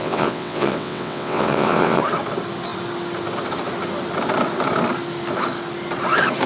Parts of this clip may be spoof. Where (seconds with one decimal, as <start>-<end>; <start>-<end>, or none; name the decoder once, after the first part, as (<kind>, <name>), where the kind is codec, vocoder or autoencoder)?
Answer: 0.0-2.0 (vocoder, WaveNeXt)